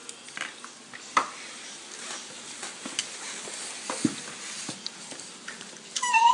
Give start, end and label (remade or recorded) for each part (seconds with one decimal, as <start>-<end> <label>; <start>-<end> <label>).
0.0-6.3 recorded